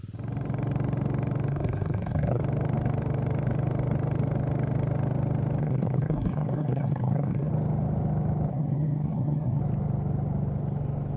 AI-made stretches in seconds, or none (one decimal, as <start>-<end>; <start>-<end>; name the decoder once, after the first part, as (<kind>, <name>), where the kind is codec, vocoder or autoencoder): 1.5-2.4 (codec, SNAC); 5.6-7.5; 8.5-9.6